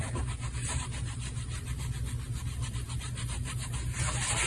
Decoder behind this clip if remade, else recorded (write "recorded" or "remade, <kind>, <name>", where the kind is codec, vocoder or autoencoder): remade, vocoder, BigVGAN v2